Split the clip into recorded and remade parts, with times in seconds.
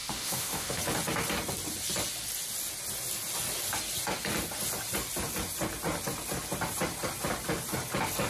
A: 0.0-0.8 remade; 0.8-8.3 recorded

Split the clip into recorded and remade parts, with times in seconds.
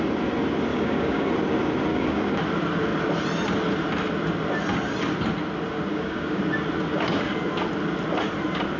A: 0.0-0.7 recorded; 0.7-1.3 remade; 1.3-1.9 recorded; 1.9-2.4 remade; 2.4-5.9 recorded; 5.9-6.4 remade; 6.4-8.8 recorded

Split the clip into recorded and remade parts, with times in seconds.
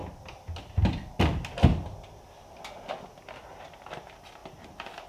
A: 0.0-5.1 recorded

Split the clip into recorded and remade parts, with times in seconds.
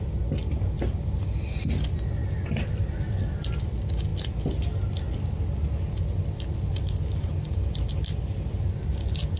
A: 0.0-9.4 recorded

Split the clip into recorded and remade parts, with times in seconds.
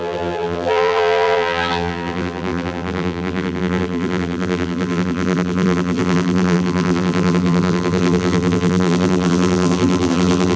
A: 0.0-10.6 remade